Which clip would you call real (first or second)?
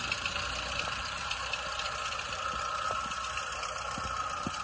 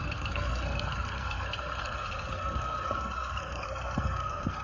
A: first